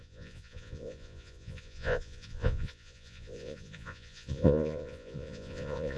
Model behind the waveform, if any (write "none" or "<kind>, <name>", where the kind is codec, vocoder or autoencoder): vocoder, Vocos